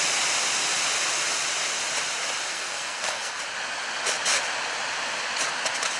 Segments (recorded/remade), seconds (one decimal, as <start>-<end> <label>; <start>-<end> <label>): 0.0-2.5 recorded; 2.5-3.4 remade; 3.4-6.0 recorded